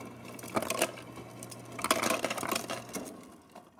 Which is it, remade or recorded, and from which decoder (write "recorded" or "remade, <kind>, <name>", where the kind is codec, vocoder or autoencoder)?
recorded